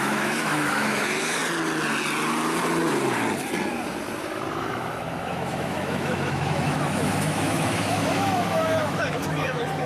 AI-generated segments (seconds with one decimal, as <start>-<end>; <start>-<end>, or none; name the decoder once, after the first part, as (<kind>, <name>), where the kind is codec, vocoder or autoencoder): 0.0-1.4 (autoencoder, DAC-VAE); 4.5-9.9